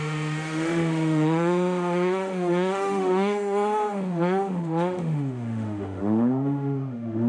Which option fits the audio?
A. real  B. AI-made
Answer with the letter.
B